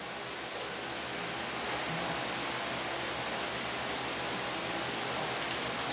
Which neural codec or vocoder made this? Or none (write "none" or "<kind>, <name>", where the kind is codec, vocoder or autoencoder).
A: none